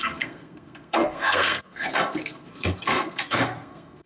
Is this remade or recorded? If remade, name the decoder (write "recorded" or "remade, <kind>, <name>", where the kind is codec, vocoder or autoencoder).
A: remade, codec, SNAC